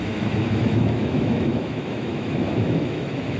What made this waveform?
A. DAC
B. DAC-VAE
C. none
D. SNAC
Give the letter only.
B